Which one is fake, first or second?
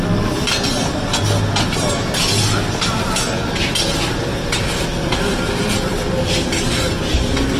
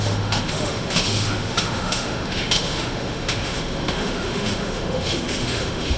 second